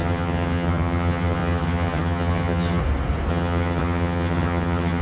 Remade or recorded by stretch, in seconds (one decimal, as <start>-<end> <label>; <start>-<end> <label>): 0.0-2.8 remade; 2.8-3.3 recorded; 3.3-5.0 remade